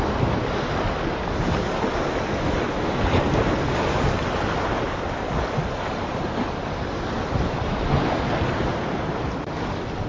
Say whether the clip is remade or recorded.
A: recorded